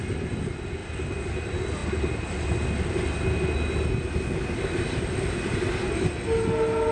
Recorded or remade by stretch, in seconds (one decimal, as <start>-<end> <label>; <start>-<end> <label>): 0.0-6.9 recorded